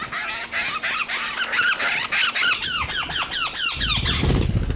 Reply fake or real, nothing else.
real